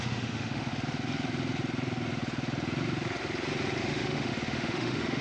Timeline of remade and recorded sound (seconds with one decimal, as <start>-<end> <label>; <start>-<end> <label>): 0.0-0.7 remade; 0.7-3.8 recorded; 3.8-5.2 remade